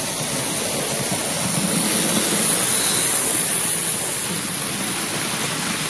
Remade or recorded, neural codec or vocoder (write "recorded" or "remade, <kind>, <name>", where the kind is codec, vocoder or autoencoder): recorded